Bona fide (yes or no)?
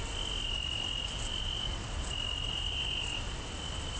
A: yes